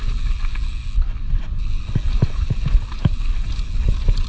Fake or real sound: real